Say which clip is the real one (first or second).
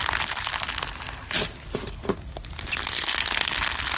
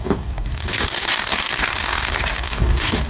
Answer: first